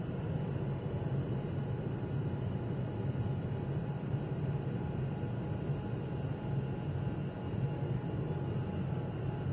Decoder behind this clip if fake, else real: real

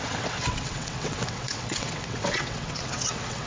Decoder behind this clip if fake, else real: fake, vocoder, WaveNeXt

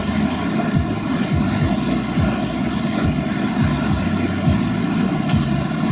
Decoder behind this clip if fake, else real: real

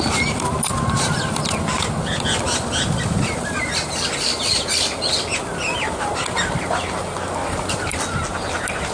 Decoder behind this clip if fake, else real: real